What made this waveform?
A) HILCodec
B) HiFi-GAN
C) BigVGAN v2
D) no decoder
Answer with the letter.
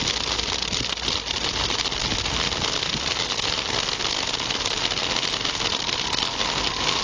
D